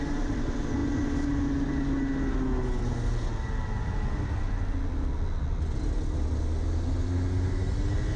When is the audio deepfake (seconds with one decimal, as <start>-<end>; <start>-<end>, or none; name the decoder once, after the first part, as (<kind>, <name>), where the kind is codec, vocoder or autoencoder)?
none